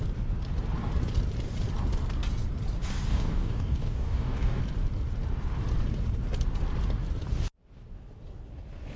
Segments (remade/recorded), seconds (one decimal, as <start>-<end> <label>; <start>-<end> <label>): 0.0-3.1 recorded; 3.1-4.6 remade; 4.6-9.0 recorded